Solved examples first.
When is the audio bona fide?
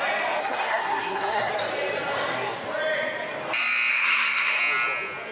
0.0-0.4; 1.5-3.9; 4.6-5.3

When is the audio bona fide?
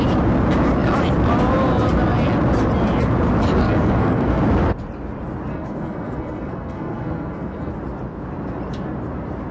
0.0-3.6; 4.4-5.5; 7.7-9.5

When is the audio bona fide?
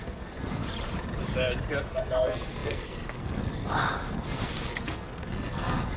0.6-1.8